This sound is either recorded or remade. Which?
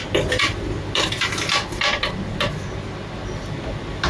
recorded